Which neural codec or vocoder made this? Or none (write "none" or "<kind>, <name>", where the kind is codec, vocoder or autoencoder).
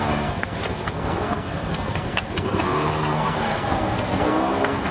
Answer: codec, SNAC